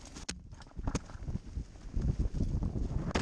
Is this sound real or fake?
real